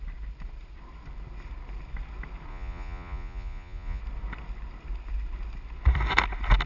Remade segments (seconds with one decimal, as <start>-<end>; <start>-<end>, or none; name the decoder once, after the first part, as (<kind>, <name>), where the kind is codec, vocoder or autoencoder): 2.5-4.0 (vocoder, Vocos)